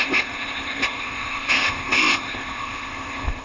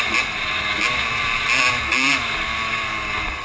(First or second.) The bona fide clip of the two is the second